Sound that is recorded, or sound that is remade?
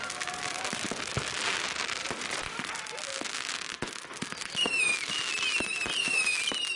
recorded